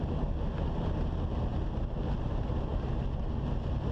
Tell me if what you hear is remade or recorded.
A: recorded